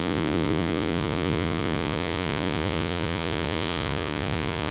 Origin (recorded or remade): remade